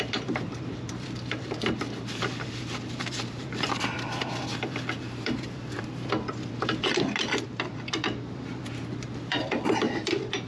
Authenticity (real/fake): fake